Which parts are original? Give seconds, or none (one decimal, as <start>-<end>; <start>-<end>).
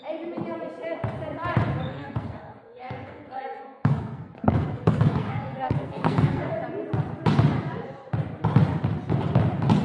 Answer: 0.0-1.9; 6.5-9.8